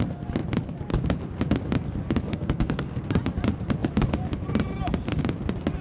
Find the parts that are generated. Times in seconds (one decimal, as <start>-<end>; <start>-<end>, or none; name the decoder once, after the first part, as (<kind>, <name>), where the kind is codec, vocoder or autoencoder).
2.3-3.0 (codec, SNAC)